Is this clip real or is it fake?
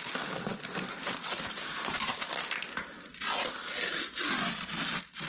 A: real